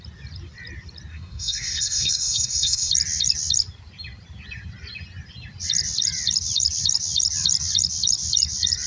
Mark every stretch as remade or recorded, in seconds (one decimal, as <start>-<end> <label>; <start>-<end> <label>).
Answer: 0.0-1.1 recorded; 1.1-2.9 remade; 2.9-8.9 recorded